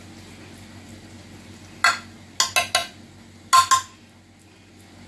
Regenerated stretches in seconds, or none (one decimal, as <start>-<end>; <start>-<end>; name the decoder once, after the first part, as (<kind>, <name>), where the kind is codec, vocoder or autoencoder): none